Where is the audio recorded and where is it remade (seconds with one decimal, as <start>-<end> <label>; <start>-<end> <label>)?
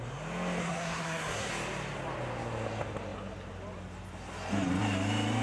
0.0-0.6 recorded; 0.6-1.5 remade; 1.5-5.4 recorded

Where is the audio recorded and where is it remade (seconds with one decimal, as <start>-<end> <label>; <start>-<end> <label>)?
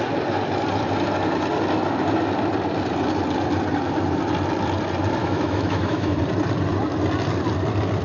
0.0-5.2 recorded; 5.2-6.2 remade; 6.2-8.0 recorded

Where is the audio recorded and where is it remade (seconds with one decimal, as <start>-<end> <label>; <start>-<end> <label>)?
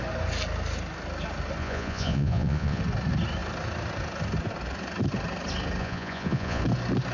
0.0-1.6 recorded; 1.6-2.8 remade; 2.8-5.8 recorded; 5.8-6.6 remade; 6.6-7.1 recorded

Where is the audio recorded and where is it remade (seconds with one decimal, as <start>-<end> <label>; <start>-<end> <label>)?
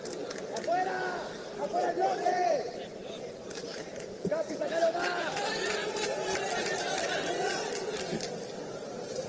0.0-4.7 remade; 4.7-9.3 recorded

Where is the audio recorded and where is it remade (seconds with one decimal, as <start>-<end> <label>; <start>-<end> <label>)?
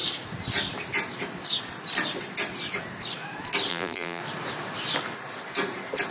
0.0-3.7 recorded; 3.7-4.2 remade; 4.2-6.1 recorded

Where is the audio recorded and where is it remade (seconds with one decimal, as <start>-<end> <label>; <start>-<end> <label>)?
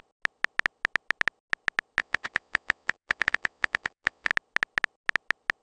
0.0-2.0 recorded; 2.0-4.3 remade; 4.3-5.6 recorded